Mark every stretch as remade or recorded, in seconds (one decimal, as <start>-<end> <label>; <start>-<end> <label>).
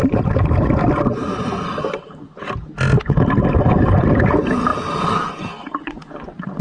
0.0-5.8 recorded; 5.8-6.6 remade